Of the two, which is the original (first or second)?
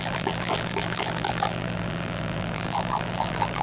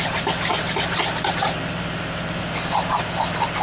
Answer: second